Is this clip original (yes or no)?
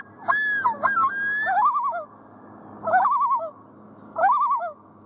yes